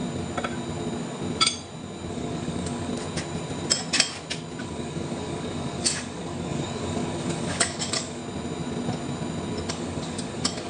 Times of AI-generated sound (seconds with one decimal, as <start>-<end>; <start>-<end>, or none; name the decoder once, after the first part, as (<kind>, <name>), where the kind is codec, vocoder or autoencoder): 2.1-2.9 (codec, DAC); 4.6-8.2; 9.7-10.7